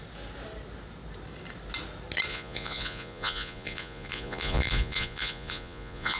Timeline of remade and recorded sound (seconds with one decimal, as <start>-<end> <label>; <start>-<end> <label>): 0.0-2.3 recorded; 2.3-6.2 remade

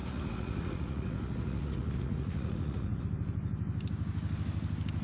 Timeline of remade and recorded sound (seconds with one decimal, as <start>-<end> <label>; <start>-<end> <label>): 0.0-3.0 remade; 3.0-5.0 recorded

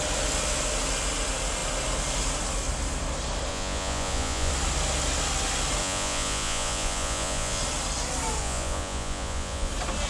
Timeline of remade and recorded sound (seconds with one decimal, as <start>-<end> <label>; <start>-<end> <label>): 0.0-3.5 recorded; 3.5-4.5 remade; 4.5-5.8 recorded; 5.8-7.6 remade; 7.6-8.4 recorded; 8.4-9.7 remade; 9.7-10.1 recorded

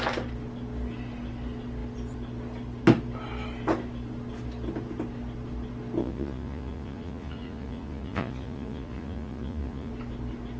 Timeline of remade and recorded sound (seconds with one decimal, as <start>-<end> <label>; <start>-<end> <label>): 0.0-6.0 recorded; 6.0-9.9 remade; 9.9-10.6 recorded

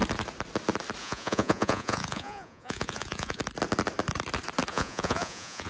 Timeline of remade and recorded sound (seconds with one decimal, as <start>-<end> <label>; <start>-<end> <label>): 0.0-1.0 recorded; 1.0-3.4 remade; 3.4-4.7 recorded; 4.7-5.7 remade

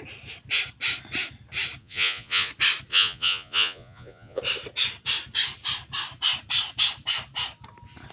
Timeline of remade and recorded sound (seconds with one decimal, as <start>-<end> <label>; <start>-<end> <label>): 0.0-1.8 recorded; 1.8-2.5 remade; 2.5-2.9 recorded; 2.9-4.4 remade; 4.4-8.1 recorded

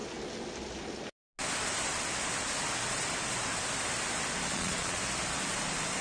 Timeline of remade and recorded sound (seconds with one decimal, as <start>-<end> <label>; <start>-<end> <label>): 0.0-4.5 recorded; 4.5-5.0 remade; 5.0-6.0 recorded